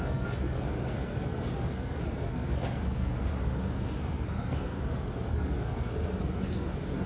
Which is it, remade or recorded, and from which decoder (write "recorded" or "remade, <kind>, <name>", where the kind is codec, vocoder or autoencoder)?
remade, codec, SNAC